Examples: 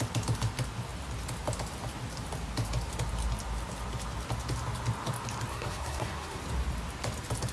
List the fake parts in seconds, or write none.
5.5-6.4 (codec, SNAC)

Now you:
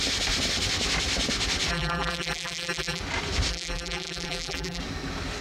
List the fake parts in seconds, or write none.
1.7-3.0 (vocoder, BigVGAN v2); 3.5-4.8

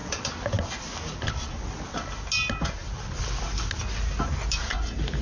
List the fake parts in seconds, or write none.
none

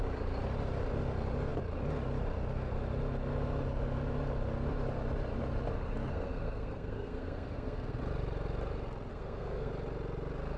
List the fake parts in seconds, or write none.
6.1-8.0 (codec, SNAC); 9.1-9.7

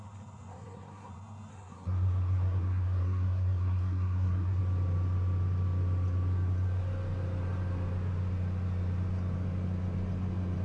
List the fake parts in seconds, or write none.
0.5-1.1 (codec, SNAC); 1.5-4.6

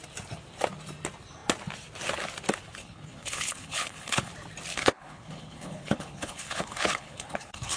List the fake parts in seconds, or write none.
2.8-4.3 (codec, HILCodec); 4.7-7.8

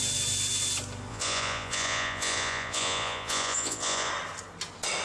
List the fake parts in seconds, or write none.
1.1-4.1 (vocoder, Vocos)

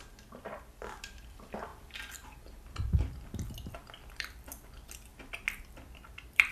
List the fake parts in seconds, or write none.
0.0-5.1 (vocoder, BigVGAN v2); 5.6-6.5